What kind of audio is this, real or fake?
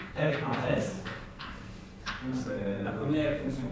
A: fake